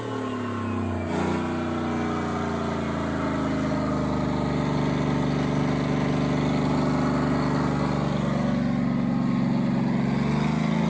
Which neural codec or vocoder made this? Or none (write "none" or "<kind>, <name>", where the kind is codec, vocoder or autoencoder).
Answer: none